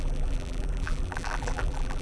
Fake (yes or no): yes